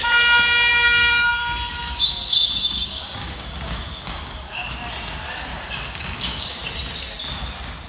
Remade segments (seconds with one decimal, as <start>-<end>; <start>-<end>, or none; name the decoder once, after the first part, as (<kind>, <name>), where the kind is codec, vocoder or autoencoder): 0.7-4.7 (codec, DAC); 5.5-6.6